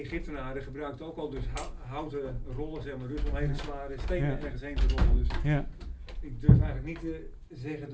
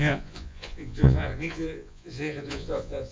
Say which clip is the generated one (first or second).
second